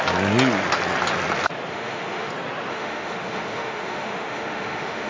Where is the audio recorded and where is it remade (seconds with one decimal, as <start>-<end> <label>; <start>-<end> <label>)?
0.0-1.7 recorded; 1.7-2.3 remade; 2.3-2.7 recorded; 2.7-5.1 remade